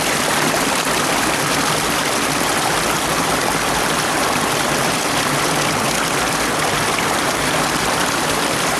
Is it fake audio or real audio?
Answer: real